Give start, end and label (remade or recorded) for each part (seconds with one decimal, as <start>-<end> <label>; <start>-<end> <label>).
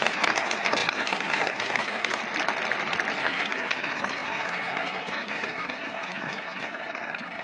0.0-2.2 remade; 2.2-3.2 recorded; 3.2-7.4 remade